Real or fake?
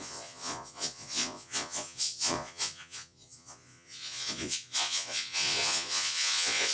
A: fake